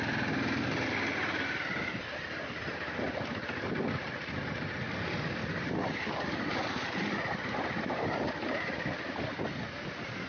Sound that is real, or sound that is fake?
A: real